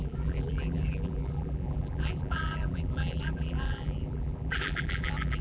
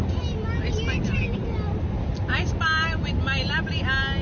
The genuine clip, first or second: second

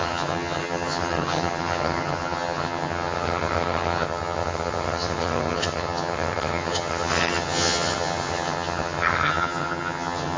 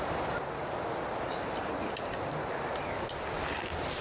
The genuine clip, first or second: second